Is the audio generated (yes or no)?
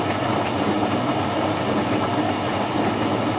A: no